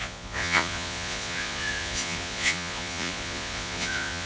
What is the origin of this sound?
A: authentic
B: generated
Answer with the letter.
B